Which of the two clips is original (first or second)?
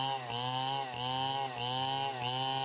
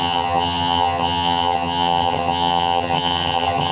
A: first